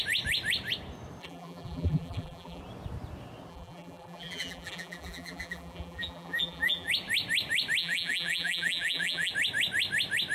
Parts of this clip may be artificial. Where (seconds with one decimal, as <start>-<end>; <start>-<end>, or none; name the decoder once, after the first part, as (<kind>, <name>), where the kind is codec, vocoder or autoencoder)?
1.2-2.6 (vocoder, BigVGAN v2); 3.5-6.9; 7.8-9.3